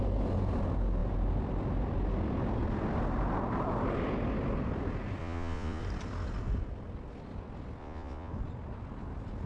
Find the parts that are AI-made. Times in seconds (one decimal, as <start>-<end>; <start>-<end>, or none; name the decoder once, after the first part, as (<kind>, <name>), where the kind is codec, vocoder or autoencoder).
5.2-5.8 (vocoder, Vocos); 7.8-8.3